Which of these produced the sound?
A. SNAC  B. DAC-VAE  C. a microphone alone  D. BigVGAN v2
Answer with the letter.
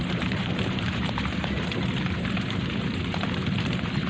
D